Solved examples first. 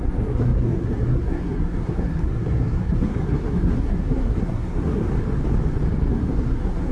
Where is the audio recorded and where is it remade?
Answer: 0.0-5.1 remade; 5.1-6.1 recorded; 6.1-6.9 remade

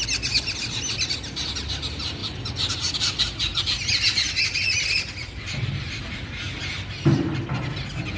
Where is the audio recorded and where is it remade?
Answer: 0.0-8.2 recorded